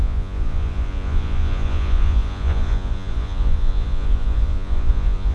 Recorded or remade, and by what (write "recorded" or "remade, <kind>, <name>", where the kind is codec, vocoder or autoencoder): remade, vocoder, Vocos